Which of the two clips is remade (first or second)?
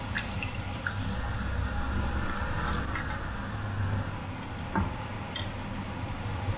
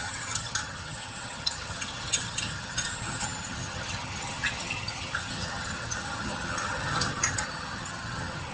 second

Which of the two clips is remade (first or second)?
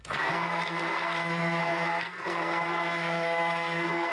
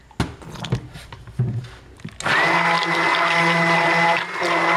first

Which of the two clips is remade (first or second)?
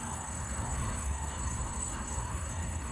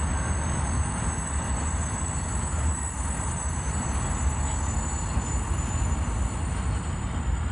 first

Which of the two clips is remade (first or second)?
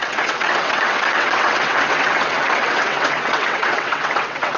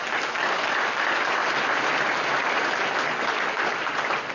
first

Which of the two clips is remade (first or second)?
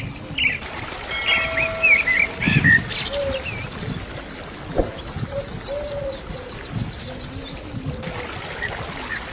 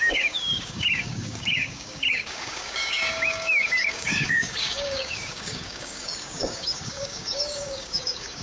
second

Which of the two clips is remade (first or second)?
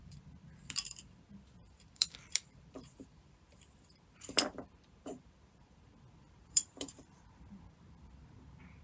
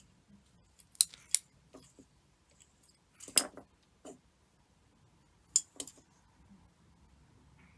first